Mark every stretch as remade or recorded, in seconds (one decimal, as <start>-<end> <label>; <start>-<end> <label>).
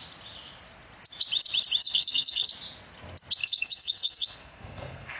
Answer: 0.0-1.8 recorded; 1.8-2.5 remade; 2.5-3.4 recorded; 3.4-5.2 remade